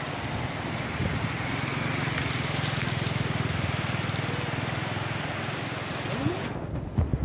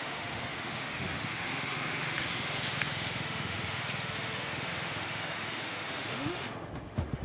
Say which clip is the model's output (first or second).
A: second